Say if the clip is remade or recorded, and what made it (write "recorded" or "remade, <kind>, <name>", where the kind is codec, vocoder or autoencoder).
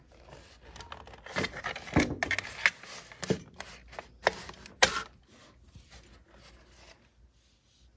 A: recorded